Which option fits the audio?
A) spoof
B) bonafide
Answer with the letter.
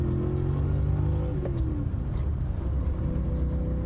B